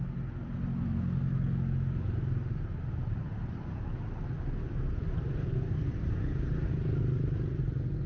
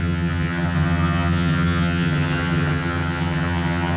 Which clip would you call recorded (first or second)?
first